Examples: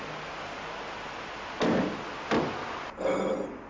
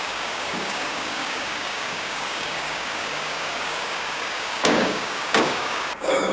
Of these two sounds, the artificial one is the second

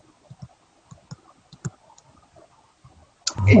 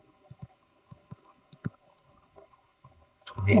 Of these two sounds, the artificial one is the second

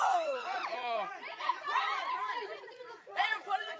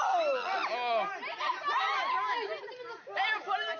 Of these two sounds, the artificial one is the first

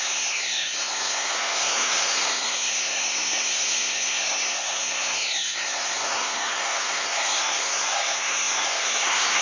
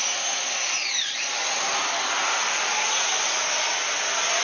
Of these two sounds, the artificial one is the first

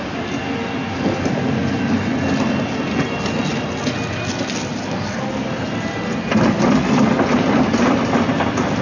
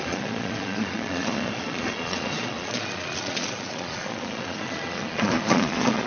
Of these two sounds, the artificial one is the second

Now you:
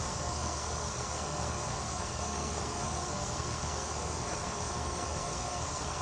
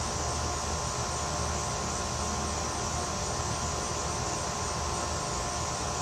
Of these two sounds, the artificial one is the first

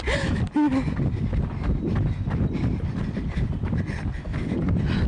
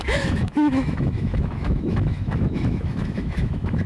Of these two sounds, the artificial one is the second